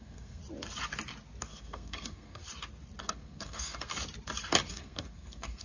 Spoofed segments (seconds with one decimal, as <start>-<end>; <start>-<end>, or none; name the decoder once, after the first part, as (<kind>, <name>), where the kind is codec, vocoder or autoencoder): 0.0-0.4 (codec, SNAC); 1.4-2.4; 3.0-3.9; 4.7-5.6